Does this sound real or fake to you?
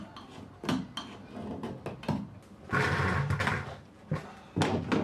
real